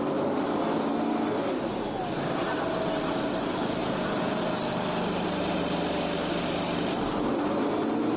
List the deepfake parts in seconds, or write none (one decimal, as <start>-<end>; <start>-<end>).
3.8-4.4

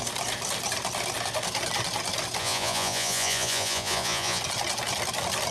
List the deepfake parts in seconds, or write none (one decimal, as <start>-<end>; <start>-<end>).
2.4-4.4

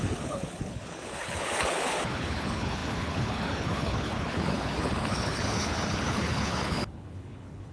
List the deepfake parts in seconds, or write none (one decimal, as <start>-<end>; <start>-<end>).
0.0-7.7

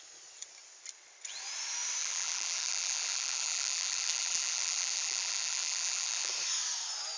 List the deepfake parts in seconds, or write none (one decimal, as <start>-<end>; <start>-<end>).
2.0-6.3

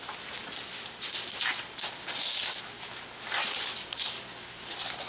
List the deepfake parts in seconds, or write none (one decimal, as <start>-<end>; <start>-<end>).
none